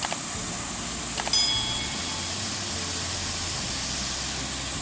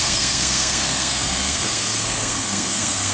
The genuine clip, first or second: first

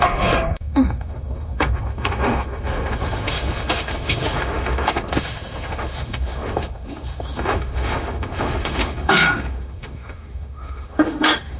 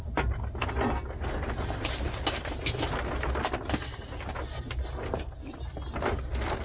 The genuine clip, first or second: second